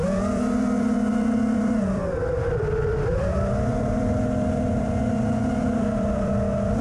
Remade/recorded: remade